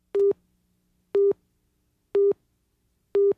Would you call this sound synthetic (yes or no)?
no